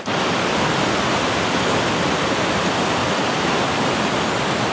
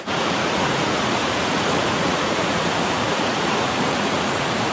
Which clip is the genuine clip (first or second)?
first